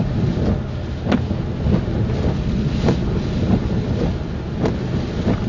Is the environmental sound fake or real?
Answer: real